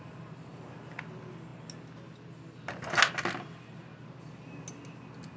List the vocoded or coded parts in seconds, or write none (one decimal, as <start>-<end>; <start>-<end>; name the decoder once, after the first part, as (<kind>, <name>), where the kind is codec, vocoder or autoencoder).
none

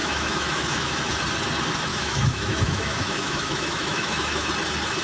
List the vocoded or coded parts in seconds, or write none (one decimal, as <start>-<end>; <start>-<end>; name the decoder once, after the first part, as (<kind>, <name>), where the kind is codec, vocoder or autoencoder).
0.0-1.1 (autoencoder, DAC-VAE); 1.9-4.5

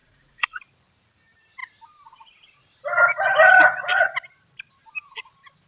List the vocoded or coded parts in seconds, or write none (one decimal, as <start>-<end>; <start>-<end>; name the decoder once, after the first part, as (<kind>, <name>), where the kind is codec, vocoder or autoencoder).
0.0-0.6 (vocoder, Vocos)

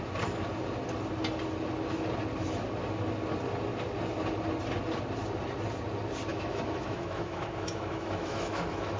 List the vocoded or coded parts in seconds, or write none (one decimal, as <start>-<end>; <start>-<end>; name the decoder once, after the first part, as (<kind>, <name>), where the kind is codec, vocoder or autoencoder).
6.3-9.0 (autoencoder, DAC-VAE)